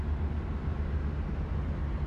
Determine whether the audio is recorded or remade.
recorded